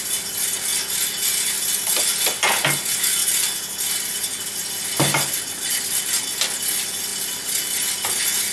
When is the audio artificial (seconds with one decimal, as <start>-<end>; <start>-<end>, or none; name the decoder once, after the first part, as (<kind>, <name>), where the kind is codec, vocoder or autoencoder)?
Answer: none